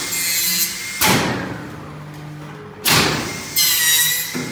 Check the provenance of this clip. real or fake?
real